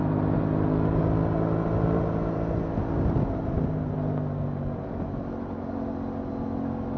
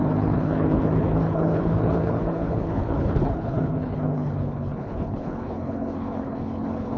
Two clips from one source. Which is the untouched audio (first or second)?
first